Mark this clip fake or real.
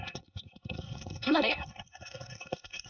fake